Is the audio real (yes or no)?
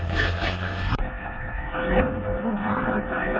no